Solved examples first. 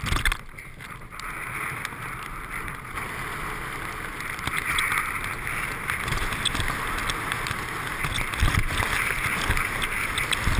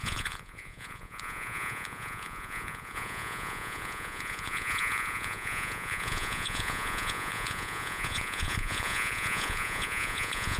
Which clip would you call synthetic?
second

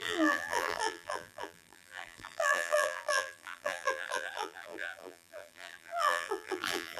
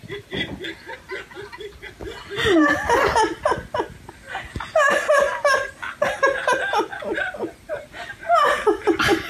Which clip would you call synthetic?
first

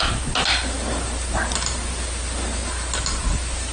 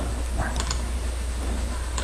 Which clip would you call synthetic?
second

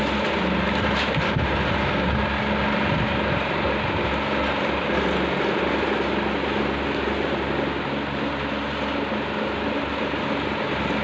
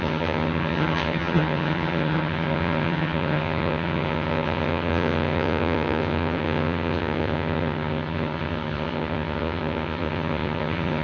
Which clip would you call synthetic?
second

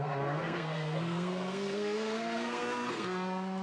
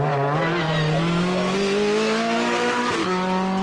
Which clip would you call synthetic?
first